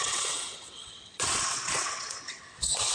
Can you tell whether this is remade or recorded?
remade